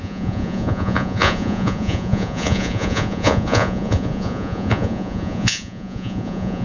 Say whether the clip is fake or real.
fake